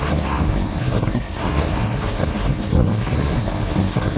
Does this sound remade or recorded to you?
remade